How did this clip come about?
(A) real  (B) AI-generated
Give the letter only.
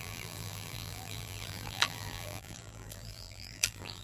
B